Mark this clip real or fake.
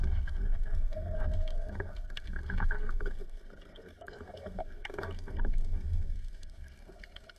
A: fake